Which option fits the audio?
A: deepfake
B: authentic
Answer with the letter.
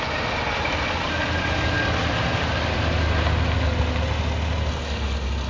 B